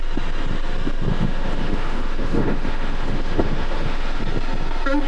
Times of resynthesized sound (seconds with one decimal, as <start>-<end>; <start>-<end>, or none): 1.1-4.2